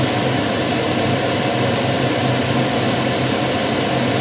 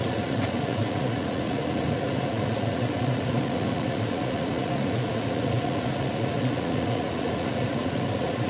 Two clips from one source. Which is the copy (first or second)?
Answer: second